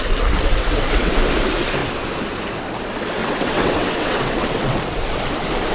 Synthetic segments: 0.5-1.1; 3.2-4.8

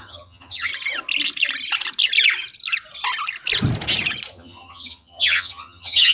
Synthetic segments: 0.0-0.7; 4.3-6.1

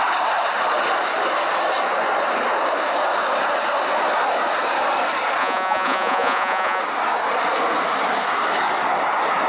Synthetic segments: 5.4-6.8